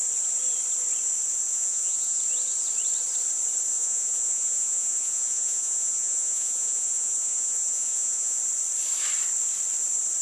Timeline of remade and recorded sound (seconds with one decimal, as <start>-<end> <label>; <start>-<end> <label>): 0.0-1.5 recorded; 1.5-2.2 remade; 2.2-3.7 recorded; 3.7-8.4 remade; 8.4-10.2 recorded